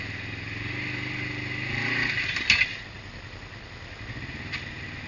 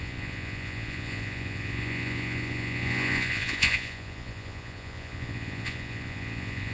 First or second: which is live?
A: first